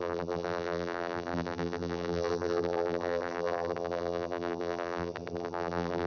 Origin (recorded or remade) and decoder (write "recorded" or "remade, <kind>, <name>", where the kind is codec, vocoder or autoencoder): remade, vocoder, BigVGAN v2